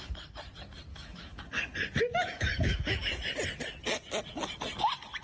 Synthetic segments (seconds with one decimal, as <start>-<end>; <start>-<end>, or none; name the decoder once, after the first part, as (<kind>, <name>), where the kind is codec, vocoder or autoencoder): 0.9-1.4 (autoencoder, DAC-VAE); 2.1-3.3